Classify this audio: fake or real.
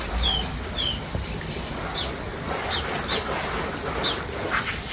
real